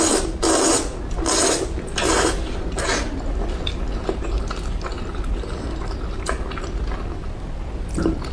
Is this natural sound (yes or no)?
yes